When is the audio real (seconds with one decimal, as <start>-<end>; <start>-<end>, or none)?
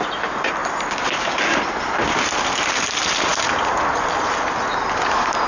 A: 0.0-5.5